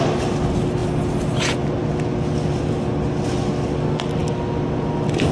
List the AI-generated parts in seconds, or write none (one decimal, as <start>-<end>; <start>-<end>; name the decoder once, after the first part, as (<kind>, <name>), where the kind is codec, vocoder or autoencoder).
none